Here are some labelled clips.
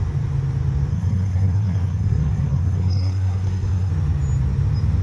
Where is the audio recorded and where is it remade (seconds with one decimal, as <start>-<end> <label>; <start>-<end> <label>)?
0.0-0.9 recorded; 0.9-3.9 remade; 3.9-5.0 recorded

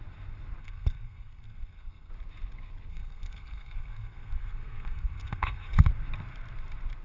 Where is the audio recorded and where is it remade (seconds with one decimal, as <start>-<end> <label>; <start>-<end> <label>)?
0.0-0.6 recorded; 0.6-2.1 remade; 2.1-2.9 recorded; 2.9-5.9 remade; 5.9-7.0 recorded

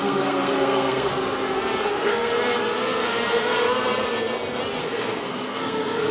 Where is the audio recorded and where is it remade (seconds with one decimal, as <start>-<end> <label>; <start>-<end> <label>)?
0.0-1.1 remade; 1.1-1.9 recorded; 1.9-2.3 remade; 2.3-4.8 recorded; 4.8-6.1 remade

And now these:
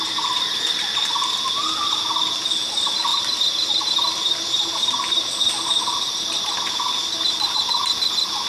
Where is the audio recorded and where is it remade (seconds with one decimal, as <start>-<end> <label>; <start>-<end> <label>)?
0.0-8.5 recorded